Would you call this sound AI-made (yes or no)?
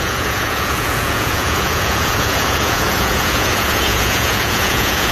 yes